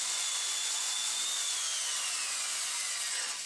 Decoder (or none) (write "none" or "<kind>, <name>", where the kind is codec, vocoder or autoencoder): vocoder, Vocos